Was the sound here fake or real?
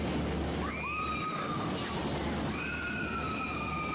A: real